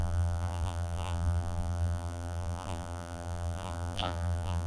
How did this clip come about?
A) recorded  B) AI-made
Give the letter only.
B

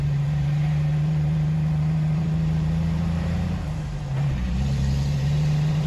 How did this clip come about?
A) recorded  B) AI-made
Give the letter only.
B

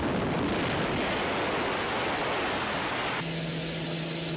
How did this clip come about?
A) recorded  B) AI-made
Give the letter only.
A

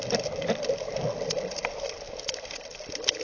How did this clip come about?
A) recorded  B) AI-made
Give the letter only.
B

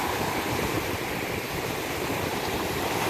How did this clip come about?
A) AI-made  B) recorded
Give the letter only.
A